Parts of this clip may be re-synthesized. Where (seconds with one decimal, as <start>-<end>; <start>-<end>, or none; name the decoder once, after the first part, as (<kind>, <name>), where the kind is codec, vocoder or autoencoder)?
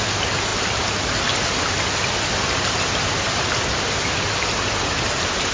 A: none